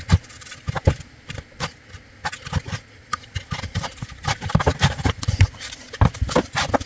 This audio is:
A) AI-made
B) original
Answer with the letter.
B